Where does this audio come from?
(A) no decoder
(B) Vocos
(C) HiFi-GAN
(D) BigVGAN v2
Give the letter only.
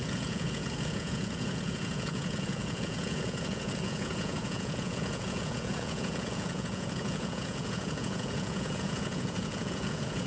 B